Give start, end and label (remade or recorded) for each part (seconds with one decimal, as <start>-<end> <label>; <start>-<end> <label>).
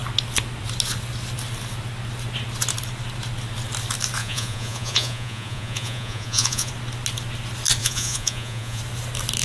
0.0-4.2 recorded; 4.2-6.7 remade; 6.7-7.8 recorded; 7.8-8.8 remade; 8.8-9.4 recorded